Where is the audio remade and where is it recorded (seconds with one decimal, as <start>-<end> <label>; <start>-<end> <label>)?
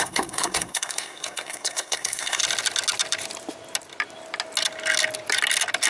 0.0-2.4 remade; 2.4-5.9 recorded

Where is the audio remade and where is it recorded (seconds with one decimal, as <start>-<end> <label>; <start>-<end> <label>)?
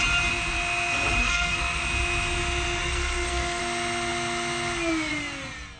0.0-1.2 recorded; 1.2-1.8 remade; 1.8-2.8 recorded; 2.8-3.6 remade; 3.6-5.8 recorded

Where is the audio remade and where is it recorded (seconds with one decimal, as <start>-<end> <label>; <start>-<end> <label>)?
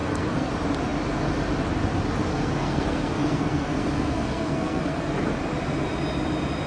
0.0-0.5 remade; 0.5-2.3 recorded; 2.3-5.3 remade; 5.3-6.7 recorded